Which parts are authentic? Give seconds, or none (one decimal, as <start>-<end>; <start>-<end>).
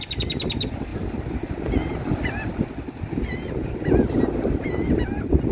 0.0-5.5